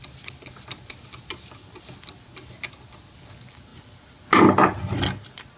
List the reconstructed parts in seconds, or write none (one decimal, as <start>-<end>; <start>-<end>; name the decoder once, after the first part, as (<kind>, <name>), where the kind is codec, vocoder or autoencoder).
none